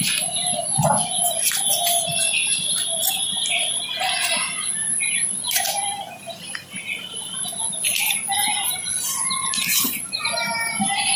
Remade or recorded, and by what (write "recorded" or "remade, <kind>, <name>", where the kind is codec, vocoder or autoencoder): recorded